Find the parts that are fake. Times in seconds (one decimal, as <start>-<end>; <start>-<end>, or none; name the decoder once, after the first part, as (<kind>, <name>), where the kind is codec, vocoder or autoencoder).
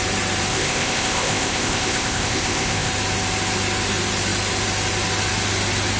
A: 0.5-2.9 (codec, ZipCodec)